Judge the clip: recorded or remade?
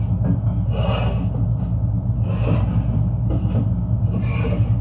recorded